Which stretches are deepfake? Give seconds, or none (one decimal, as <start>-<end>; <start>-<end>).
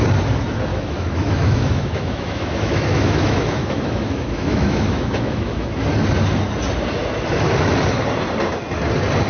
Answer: 0.7-5.8